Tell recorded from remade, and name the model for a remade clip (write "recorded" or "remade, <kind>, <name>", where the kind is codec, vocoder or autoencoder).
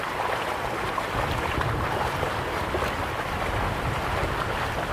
recorded